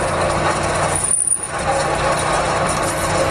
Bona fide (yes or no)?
yes